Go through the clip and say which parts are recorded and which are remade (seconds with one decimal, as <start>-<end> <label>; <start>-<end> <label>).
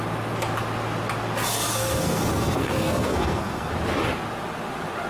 0.0-1.5 recorded; 1.5-3.7 remade; 3.7-5.1 recorded